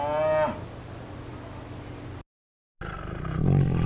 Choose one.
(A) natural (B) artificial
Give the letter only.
A